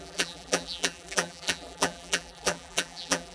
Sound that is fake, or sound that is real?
fake